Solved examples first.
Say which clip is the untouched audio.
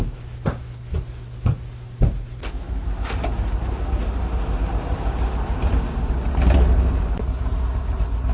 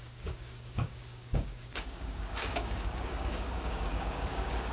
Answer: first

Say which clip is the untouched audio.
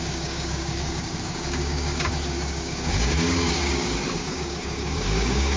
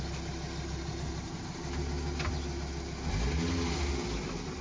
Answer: second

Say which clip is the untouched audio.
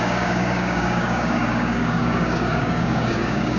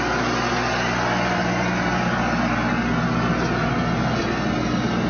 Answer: second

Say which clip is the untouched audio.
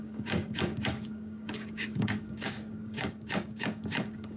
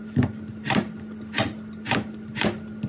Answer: second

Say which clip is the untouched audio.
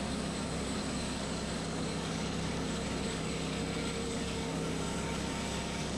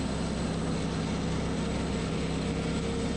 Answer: second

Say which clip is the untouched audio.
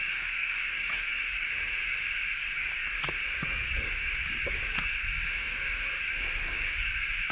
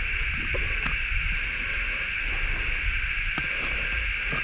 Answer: second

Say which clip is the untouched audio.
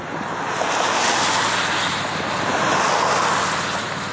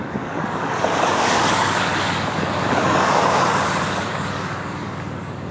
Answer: first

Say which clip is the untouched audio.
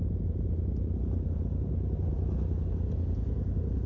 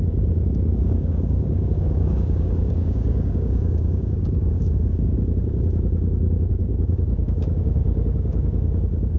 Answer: first